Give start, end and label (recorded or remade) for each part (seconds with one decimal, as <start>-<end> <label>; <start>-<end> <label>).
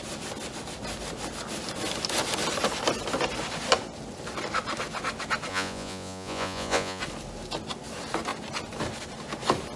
0.0-5.5 recorded; 5.5-7.0 remade; 7.0-9.8 recorded